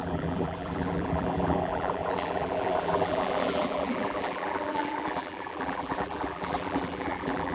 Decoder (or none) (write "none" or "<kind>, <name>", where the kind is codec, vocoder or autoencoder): vocoder, BigVGAN v2